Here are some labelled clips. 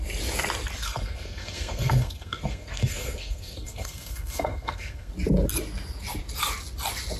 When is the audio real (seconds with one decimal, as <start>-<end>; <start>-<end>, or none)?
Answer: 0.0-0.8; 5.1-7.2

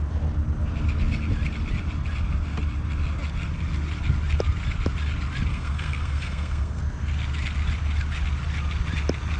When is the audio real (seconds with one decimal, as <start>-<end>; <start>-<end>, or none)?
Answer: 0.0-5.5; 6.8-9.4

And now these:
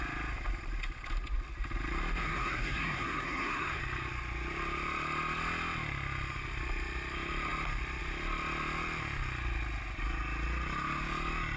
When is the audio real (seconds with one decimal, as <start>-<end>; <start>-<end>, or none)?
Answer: 0.0-2.2; 3.8-11.6